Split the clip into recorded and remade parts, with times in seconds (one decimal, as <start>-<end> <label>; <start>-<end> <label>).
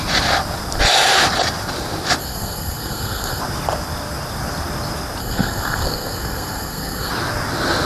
0.0-2.2 recorded; 2.2-3.4 remade; 3.4-5.2 recorded; 5.2-7.1 remade; 7.1-7.9 recorded